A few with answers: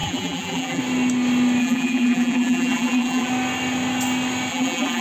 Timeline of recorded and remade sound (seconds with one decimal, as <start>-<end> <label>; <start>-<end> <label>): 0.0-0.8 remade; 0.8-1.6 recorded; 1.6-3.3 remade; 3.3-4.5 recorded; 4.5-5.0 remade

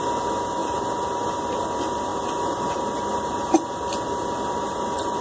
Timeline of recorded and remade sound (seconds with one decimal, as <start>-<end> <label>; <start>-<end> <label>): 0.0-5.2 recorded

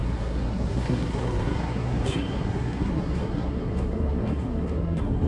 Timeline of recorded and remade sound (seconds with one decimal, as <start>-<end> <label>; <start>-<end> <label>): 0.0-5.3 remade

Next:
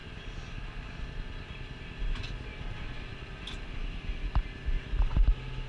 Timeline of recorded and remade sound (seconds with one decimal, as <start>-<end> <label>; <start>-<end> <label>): 0.0-2.2 remade; 2.2-5.7 recorded

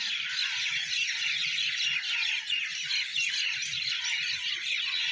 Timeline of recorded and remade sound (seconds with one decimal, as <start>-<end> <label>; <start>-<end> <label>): 0.0-0.4 recorded; 0.4-1.5 remade; 1.5-3.1 recorded; 3.1-4.5 remade; 4.5-5.1 recorded

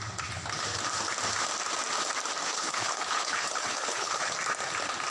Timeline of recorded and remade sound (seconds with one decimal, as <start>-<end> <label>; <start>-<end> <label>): 0.0-2.4 recorded; 2.4-4.3 remade; 4.3-5.1 recorded

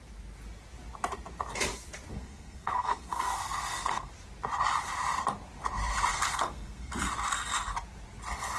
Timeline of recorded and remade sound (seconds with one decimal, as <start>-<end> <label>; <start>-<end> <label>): 0.0-2.1 recorded; 2.1-4.1 remade; 4.1-6.1 recorded; 6.1-6.9 remade; 6.9-8.6 recorded

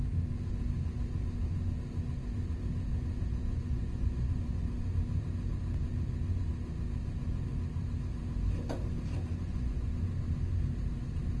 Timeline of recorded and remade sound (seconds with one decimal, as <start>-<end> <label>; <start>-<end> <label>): 0.0-2.9 recorded; 2.9-4.6 remade; 4.6-9.5 recorded; 9.5-10.1 remade; 10.1-11.4 recorded